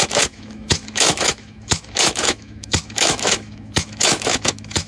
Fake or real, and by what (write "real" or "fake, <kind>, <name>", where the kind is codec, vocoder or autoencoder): fake, autoencoder, DAC-VAE